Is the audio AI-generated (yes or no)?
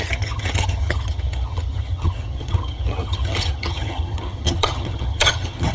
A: yes